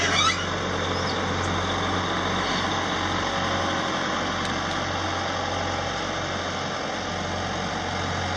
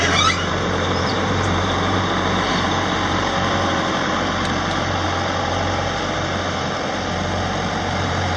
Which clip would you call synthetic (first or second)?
second